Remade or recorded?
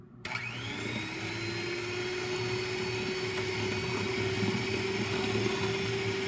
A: recorded